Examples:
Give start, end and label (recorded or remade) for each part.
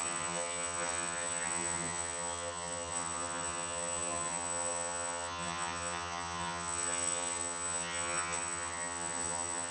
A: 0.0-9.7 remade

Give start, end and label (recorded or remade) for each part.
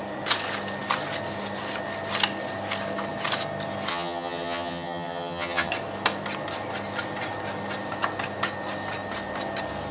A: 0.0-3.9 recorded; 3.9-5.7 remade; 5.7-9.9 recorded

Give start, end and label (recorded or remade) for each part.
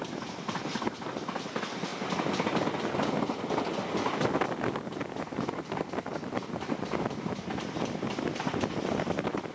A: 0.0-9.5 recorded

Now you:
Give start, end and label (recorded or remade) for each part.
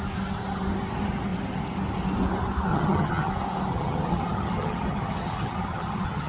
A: 0.0-2.7 recorded; 2.7-3.3 remade; 3.3-3.7 recorded; 3.7-6.3 remade